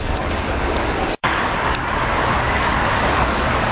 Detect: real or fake fake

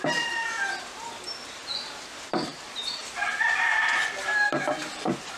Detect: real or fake real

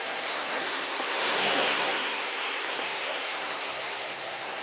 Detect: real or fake fake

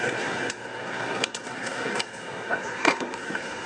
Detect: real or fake fake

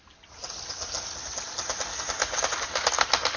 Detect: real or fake real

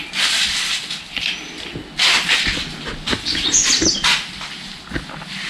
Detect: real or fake real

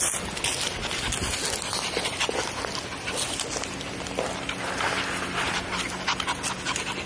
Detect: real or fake real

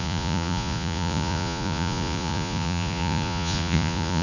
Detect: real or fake fake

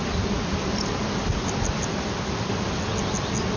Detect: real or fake real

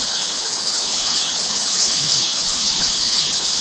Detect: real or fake fake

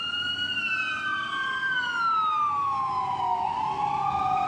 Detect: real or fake real